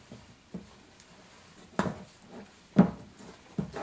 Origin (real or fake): real